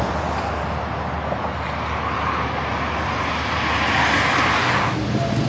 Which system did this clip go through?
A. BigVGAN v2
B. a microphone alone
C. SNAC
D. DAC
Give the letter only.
B